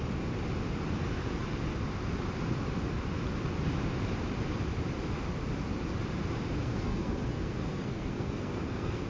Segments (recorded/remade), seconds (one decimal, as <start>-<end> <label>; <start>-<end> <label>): 0.0-6.6 recorded; 6.6-9.1 remade